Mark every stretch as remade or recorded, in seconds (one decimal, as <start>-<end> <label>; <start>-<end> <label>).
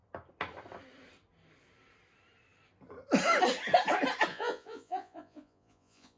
0.0-4.3 recorded; 4.3-6.2 remade